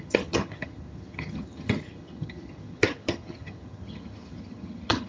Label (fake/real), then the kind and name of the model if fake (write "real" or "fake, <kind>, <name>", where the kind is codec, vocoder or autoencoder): fake, vocoder, HiFi-GAN